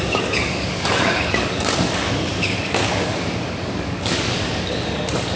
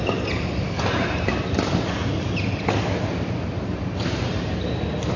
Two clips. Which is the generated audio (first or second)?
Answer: first